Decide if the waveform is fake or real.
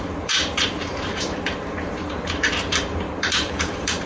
fake